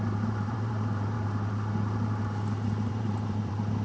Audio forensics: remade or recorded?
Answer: remade